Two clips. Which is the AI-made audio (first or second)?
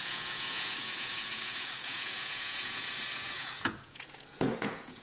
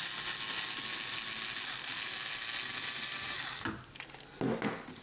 first